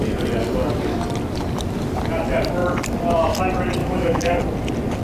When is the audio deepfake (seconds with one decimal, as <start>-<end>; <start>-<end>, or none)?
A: 3.8-4.4